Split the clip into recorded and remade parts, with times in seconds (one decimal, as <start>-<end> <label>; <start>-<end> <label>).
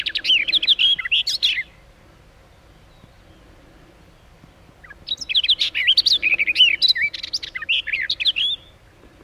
0.0-9.2 recorded